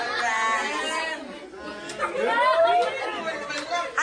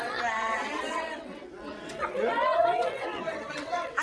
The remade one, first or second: second